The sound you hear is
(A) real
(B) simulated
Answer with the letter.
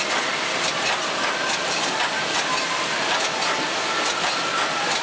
A